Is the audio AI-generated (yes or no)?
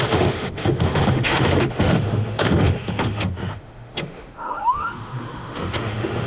yes